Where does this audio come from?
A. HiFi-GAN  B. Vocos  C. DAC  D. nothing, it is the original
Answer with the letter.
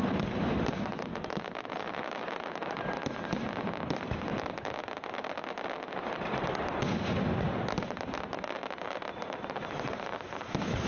D